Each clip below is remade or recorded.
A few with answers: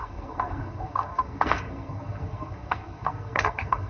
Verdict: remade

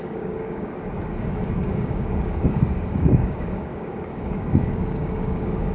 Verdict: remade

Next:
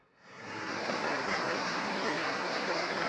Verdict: remade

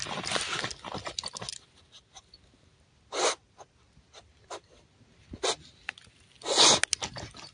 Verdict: recorded